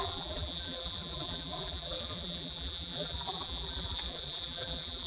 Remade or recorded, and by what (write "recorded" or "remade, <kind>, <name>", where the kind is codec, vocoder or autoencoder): remade, vocoder, BigVGAN v2